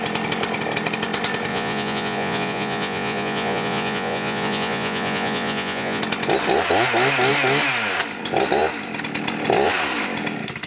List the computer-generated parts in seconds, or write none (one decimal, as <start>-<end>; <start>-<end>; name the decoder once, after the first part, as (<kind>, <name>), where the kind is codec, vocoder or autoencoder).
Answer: 1.5-6.0 (vocoder, Vocos)